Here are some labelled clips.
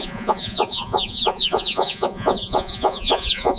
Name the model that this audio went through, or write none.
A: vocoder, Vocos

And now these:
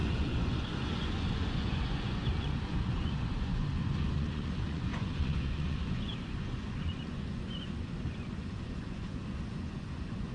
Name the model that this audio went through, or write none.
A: vocoder, Vocos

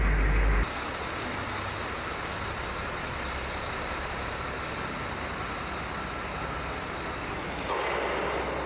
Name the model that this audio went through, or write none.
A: none